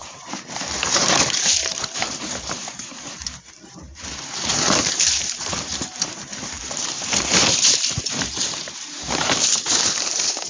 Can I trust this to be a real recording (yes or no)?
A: no